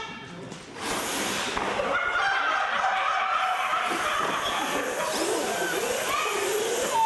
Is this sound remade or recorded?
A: recorded